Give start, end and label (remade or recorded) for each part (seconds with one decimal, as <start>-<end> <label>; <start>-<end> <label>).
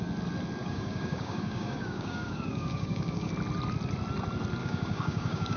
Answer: 0.0-0.6 recorded; 0.6-3.3 remade; 3.3-4.6 recorded; 4.6-5.6 remade